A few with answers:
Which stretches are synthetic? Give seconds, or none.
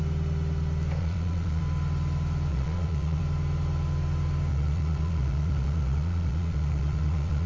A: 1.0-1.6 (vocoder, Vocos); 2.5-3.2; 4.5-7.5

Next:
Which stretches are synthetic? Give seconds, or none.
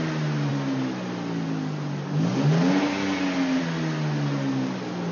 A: none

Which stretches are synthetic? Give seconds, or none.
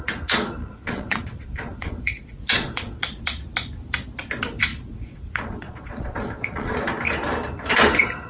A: 0.6-3.2 (vocoder, Vocos); 4.7-6.8